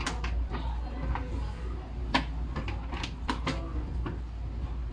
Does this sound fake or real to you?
real